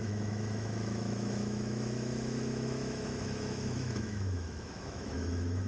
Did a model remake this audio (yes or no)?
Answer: yes